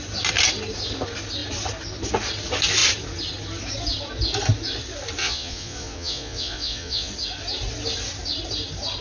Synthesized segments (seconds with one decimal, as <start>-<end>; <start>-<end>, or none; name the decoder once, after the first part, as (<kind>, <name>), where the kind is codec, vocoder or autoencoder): 5.2-7.1 (vocoder, Vocos)